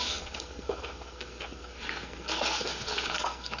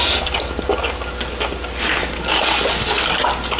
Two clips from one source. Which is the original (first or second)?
second